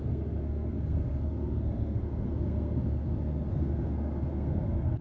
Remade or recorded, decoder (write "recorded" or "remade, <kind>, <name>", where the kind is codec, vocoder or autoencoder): remade, codec, SNAC